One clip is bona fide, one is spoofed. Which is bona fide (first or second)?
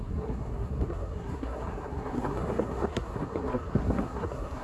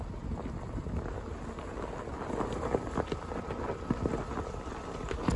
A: second